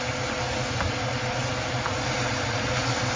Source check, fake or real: real